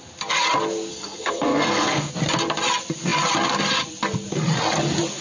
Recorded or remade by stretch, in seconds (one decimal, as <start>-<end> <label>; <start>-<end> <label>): 0.0-0.9 recorded; 0.9-2.1 remade; 2.1-5.2 recorded